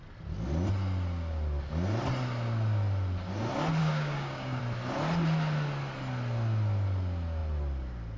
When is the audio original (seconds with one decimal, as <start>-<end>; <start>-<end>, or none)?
0.0-3.8; 4.6-8.2